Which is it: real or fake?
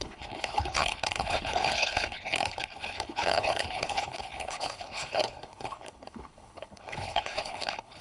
fake